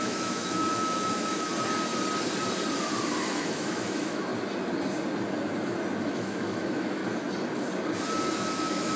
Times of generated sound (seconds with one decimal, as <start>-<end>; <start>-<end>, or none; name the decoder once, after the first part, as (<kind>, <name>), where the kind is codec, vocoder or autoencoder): 0.0-1.5 (autoencoder, DAC-VAE); 3.2-4.3; 6.0-7.0; 8.3-9.0